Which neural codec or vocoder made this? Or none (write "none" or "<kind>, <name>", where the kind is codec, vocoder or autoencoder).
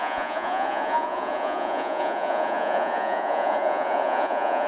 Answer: vocoder, Vocos